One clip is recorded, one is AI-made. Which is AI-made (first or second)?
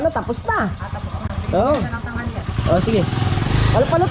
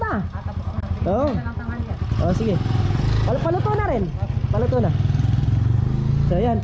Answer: first